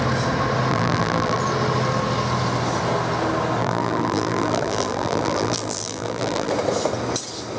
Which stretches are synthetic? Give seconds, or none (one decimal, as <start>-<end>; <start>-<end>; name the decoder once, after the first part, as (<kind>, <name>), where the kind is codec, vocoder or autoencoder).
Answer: 0.7-1.4 (vocoder, BigVGAN v2); 3.6-6.5

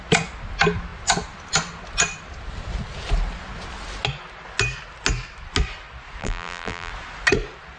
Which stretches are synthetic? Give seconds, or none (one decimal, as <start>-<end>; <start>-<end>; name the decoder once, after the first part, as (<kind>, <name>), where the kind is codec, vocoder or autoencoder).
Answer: 6.2-6.9 (vocoder, BigVGAN v2)

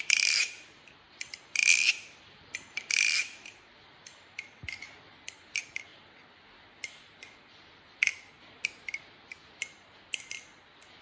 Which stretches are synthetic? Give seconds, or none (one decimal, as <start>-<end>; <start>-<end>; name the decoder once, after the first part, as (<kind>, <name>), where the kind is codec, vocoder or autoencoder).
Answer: 0.0-5.9 (vocoder, BigVGAN v2); 8.4-11.0

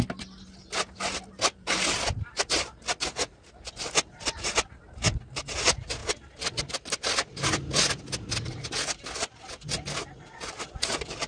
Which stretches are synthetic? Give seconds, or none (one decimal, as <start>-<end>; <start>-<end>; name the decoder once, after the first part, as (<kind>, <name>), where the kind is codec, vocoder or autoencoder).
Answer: none